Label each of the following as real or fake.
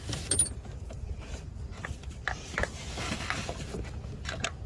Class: real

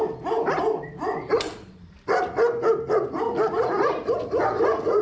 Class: real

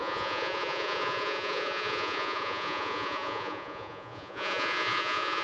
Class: fake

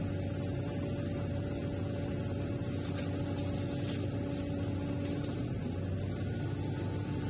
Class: real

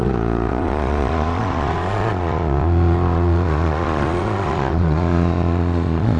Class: fake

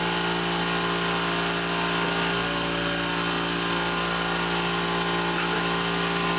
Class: real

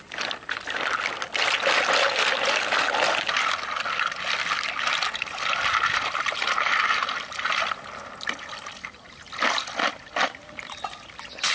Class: real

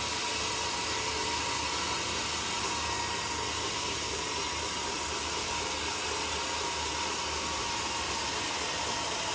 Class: real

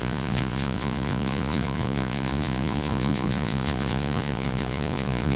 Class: fake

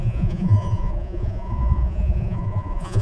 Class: fake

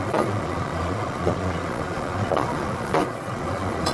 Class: fake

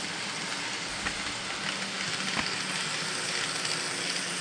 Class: real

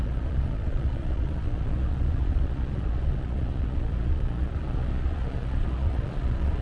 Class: fake